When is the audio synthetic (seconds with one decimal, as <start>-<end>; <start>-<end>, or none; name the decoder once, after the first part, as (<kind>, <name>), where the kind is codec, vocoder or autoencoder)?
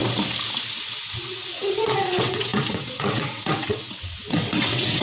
0.8-5.0 (vocoder, WaveNeXt)